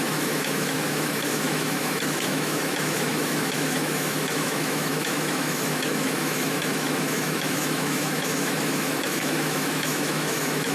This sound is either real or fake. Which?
fake